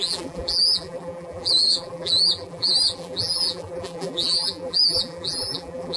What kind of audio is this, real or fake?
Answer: fake